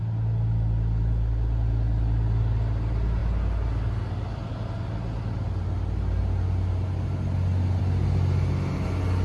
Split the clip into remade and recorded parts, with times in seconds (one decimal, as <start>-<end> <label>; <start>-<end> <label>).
0.0-9.2 recorded